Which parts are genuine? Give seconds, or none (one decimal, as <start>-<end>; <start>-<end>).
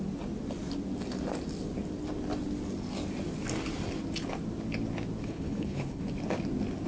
0.0-5.2; 6.0-6.9